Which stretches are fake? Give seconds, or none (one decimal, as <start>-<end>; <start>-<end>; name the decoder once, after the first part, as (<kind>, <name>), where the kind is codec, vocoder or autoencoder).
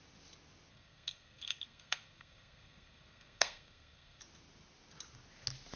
0.7-4.2 (codec, SNAC)